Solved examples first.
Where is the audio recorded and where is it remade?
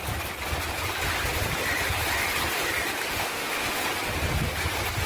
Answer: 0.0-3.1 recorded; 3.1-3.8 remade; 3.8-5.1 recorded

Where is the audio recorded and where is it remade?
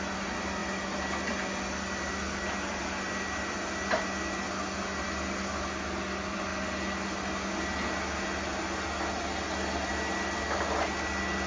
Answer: 0.0-11.5 recorded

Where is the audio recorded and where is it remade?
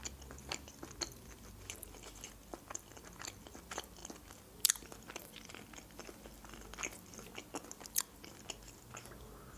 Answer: 0.0-9.6 recorded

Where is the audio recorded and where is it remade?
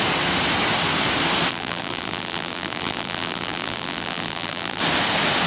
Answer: 0.0-1.5 recorded; 1.5-4.8 remade; 4.8-5.5 recorded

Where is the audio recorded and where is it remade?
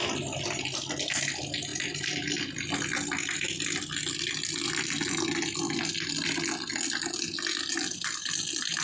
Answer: 0.0-8.8 recorded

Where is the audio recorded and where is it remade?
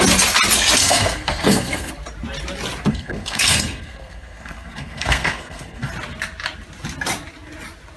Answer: 0.0-0.8 recorded; 0.8-1.9 remade; 1.9-2.9 recorded; 2.9-5.9 remade; 5.9-8.0 recorded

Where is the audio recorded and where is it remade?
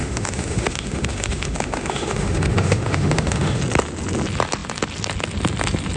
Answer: 0.0-3.6 remade; 3.6-6.0 recorded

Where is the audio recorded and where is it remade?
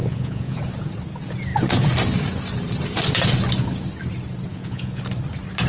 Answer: 0.0-0.6 remade; 0.6-4.5 recorded; 4.5-5.0 remade; 5.0-5.7 recorded